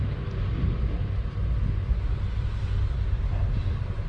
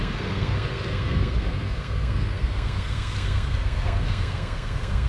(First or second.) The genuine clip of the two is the first